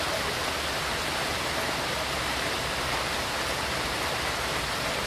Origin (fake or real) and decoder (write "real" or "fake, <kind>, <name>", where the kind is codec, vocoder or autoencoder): real